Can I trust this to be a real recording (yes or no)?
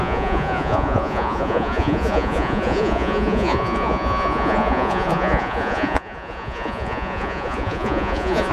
no